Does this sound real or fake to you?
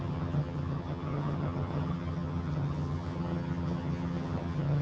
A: fake